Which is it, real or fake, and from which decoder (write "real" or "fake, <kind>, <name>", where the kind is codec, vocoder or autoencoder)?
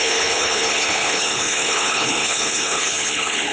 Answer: fake, codec, HILCodec